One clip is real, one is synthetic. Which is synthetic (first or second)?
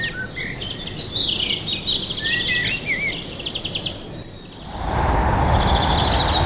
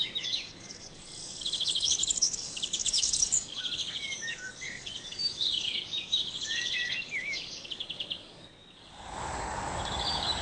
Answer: second